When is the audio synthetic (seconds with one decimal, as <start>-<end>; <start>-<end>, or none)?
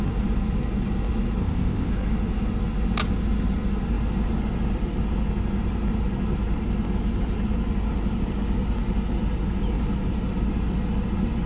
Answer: 1.4-1.9